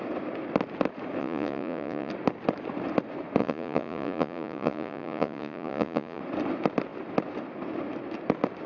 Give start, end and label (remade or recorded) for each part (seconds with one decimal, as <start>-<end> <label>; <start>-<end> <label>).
0.0-1.2 recorded; 1.2-2.1 remade; 2.1-3.4 recorded; 3.4-6.2 remade; 6.2-8.7 recorded